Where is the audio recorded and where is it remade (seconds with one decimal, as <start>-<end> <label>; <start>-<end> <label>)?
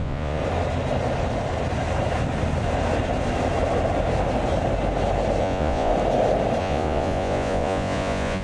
0.0-0.4 remade; 0.4-5.4 recorded; 5.4-5.9 remade; 5.9-6.6 recorded; 6.6-8.4 remade